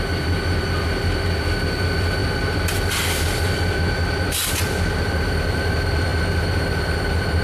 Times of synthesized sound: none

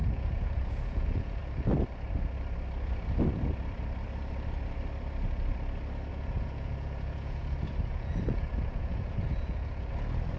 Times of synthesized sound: 0.0-1.4 (vocoder, Vocos); 6.1-9.9

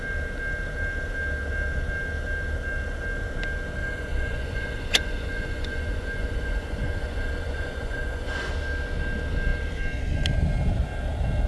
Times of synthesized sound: 3.8-8.5 (vocoder, Vocos)

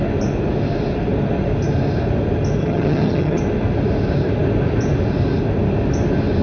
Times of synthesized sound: 2.6-3.4 (vocoder, HiFi-GAN)

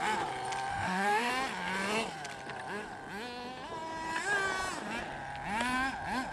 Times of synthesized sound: 0.7-1.3 (autoencoder, DAC-VAE)